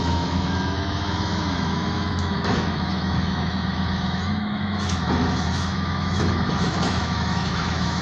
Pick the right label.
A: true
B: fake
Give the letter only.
B